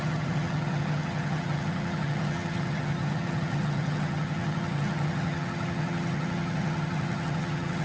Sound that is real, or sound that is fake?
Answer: fake